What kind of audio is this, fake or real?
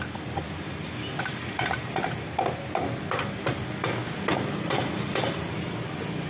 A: real